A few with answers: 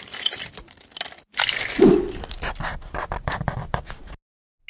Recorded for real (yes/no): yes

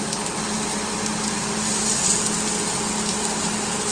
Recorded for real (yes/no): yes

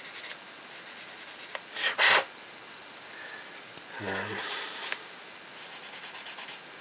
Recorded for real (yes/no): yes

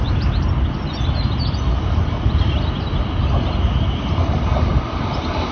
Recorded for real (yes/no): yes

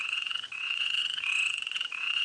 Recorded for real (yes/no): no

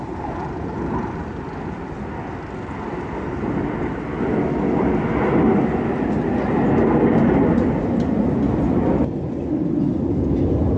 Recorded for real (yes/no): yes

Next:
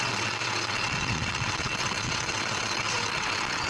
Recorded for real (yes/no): no